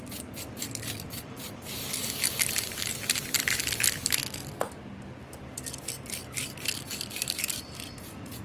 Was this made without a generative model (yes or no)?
no